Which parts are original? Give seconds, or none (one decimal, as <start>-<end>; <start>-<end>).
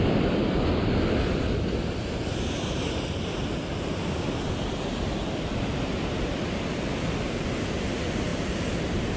0.0-9.2